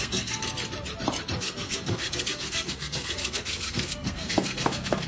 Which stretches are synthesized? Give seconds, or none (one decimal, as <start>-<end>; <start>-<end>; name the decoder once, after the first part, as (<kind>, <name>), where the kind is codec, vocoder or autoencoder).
0.0-0.4 (codec, SNAC); 1.4-5.1